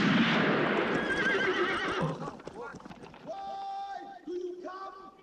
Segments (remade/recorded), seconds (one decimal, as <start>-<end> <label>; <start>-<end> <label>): 0.0-5.2 recorded